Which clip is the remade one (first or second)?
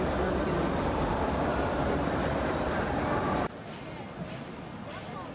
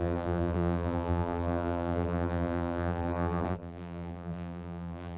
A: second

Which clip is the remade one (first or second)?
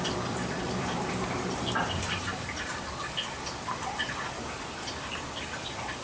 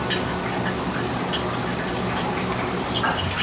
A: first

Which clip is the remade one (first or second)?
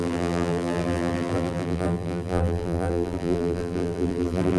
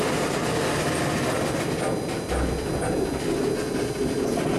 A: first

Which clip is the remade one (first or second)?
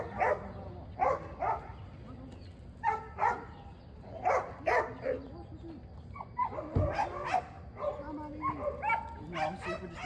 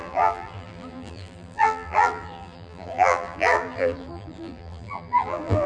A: second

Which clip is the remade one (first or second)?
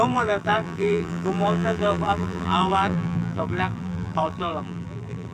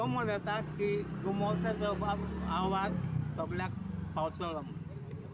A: first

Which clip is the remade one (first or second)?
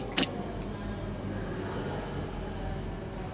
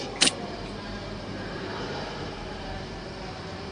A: second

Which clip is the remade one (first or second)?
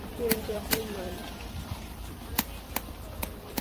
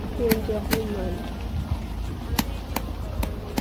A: first